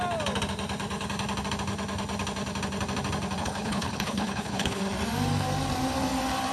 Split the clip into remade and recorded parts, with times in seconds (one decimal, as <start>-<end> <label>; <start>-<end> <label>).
0.0-3.4 recorded; 3.4-4.8 remade; 4.8-6.5 recorded